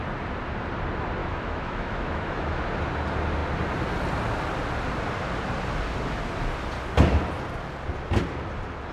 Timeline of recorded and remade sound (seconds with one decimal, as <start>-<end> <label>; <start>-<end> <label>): 0.0-1.2 recorded; 1.2-2.6 remade; 2.6-8.9 recorded